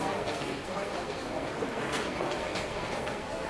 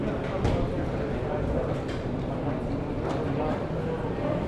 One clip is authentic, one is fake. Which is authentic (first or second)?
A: second